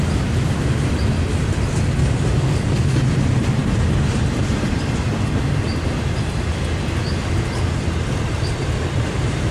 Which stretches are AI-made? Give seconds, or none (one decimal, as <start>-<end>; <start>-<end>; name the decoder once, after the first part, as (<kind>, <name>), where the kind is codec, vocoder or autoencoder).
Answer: 2.0-3.0 (codec, DAC)